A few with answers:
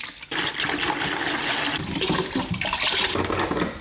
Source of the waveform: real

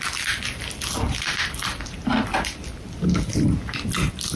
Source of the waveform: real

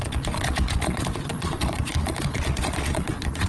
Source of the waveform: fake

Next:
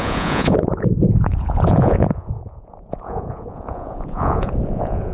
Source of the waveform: fake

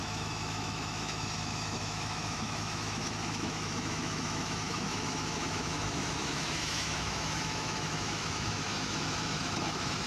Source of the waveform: fake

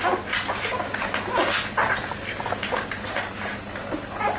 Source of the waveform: real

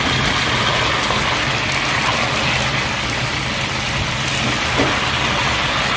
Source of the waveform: real